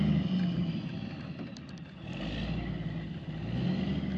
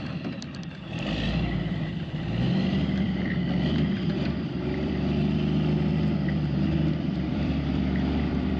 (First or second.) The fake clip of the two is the second